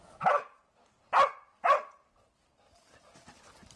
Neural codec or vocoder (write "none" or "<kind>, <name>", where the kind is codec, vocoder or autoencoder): none